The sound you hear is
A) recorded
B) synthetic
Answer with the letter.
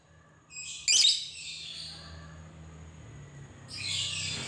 A